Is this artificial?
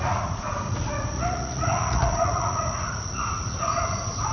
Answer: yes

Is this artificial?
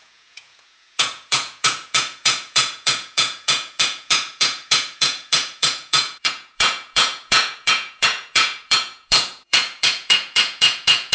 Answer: yes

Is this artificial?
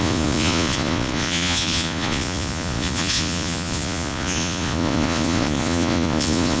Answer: yes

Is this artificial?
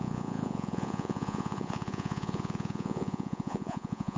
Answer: yes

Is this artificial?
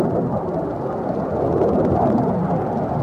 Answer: no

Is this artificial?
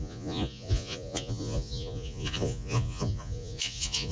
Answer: yes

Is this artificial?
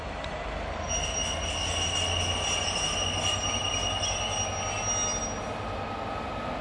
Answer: no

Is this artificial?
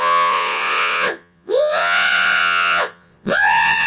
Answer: yes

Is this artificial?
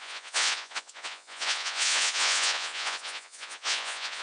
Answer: yes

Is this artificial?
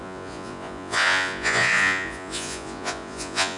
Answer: yes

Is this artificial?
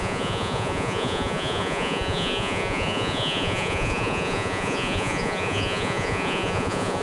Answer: yes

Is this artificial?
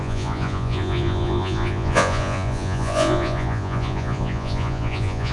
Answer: yes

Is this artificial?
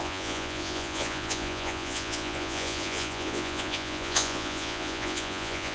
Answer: yes